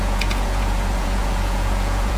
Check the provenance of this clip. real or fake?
fake